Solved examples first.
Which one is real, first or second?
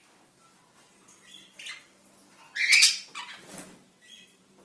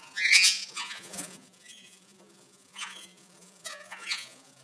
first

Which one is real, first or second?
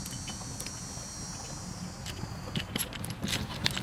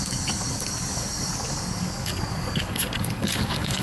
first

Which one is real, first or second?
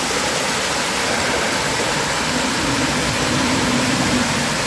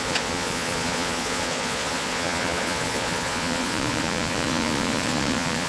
first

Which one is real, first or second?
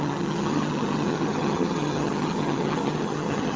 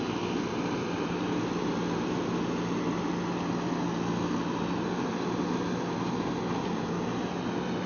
second